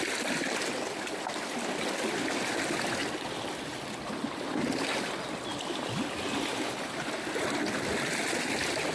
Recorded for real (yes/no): yes